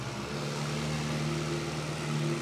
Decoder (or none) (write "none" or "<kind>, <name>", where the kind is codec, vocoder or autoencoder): none